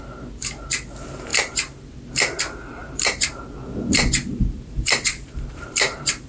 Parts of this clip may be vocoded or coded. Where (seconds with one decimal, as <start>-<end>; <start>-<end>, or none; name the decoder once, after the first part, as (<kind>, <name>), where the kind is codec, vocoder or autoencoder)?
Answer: 2.8-3.3 (vocoder, BigVGAN v2); 4.3-6.3

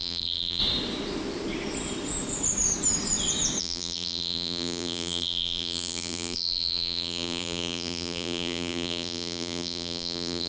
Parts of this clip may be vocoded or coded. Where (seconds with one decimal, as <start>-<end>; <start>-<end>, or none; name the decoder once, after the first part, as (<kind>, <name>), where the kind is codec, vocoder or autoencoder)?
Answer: 0.0-0.6 (vocoder, BigVGAN v2); 3.6-10.5

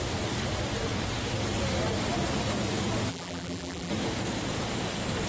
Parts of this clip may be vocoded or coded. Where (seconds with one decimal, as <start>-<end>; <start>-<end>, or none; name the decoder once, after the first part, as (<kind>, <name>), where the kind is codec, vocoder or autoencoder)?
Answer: 3.1-3.9 (vocoder, BigVGAN v2)

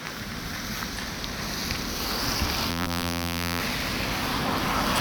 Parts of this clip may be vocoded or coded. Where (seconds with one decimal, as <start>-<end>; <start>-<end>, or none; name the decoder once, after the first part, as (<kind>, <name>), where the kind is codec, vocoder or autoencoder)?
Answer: 2.7-3.6 (vocoder, BigVGAN v2)